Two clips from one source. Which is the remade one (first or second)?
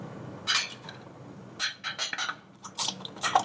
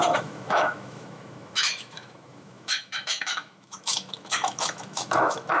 second